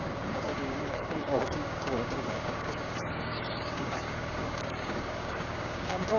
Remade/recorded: remade